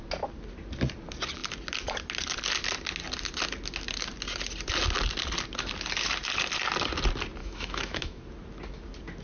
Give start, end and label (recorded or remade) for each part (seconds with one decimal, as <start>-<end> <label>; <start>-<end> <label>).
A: 0.0-7.4 recorded; 7.4-8.2 remade; 8.2-9.2 recorded

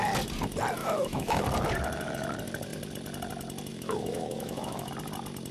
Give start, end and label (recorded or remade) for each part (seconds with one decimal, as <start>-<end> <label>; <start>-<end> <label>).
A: 0.0-0.8 recorded; 0.8-1.4 remade; 1.4-3.7 recorded; 3.7-4.9 remade; 4.9-5.5 recorded